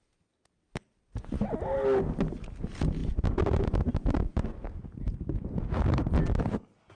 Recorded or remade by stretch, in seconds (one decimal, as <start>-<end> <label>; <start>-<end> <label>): 0.0-3.0 recorded; 3.0-3.8 remade; 3.8-6.9 recorded